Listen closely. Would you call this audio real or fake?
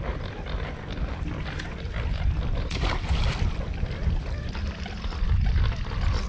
real